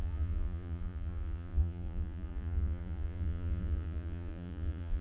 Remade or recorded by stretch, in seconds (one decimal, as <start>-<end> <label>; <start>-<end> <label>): 0.0-5.0 remade